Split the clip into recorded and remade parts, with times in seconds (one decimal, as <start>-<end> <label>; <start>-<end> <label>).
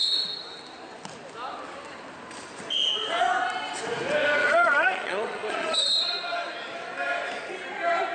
0.0-4.4 recorded; 4.4-5.9 remade; 5.9-8.1 recorded